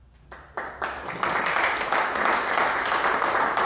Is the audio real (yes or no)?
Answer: yes